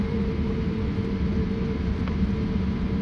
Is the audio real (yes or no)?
no